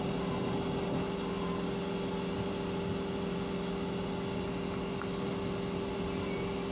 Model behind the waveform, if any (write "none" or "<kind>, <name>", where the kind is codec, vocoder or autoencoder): none